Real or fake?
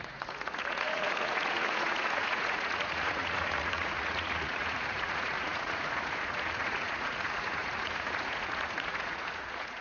fake